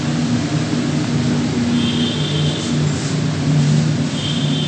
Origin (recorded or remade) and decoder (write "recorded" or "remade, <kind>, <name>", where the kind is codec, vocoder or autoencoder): recorded